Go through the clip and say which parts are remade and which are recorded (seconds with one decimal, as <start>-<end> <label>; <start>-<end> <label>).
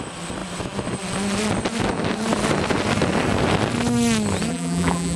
0.0-4.5 recorded; 4.5-5.2 remade